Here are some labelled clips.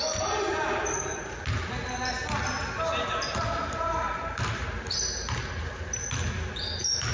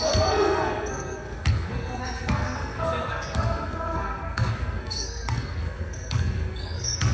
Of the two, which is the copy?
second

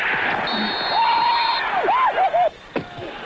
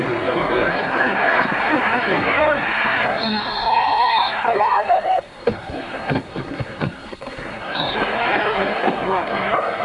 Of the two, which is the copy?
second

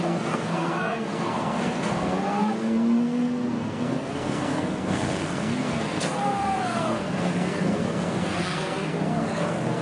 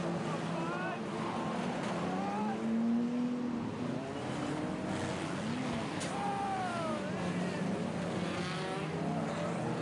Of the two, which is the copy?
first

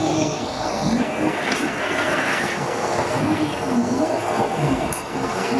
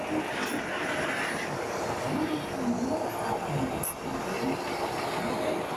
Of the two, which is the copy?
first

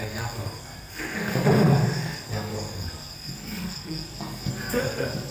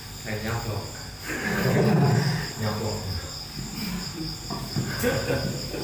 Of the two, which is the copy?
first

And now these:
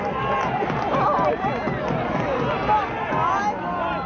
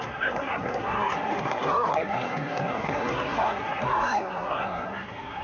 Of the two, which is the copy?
second